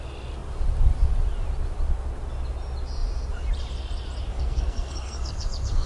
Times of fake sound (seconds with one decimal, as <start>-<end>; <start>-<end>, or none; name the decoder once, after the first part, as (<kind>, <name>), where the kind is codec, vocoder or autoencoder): 4.3-5.9 (codec, SNAC)